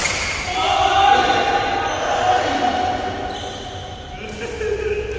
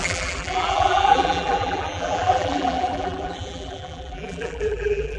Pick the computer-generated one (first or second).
second